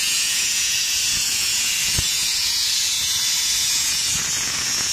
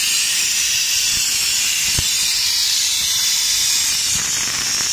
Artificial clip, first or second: first